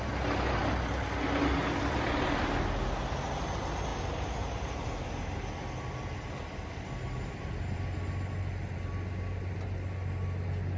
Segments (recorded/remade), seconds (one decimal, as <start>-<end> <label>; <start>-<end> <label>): 0.0-10.8 recorded